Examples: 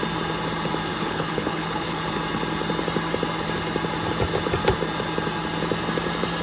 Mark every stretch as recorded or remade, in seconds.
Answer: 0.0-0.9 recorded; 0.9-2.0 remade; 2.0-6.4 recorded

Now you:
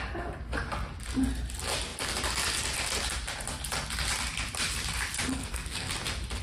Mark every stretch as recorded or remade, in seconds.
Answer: 0.0-5.3 recorded; 5.3-5.9 remade; 5.9-6.4 recorded

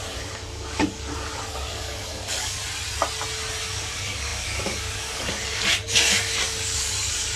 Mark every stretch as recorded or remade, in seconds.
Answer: 0.0-2.6 remade; 2.6-3.7 recorded; 3.7-7.4 remade

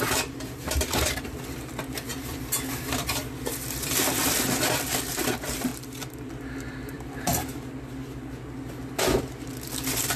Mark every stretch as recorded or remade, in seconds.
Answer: 0.0-5.7 remade; 5.7-6.3 recorded; 6.3-7.3 remade; 7.3-8.8 recorded; 8.8-10.2 remade

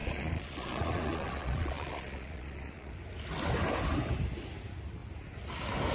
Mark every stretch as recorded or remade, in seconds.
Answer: 0.0-2.9 remade; 2.9-5.9 recorded

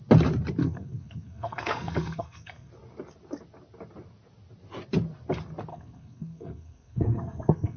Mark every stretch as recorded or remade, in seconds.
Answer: 0.0-0.6 recorded; 0.6-2.7 remade; 2.7-5.7 recorded; 5.7-7.8 remade

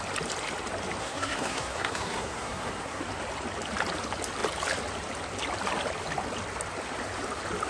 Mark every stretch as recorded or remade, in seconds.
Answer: 0.0-1.0 recorded; 1.0-3.0 remade; 3.0-7.7 recorded

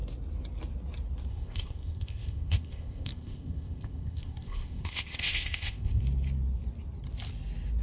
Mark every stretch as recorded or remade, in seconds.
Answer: 0.0-1.3 recorded; 1.3-6.0 remade; 6.0-7.8 recorded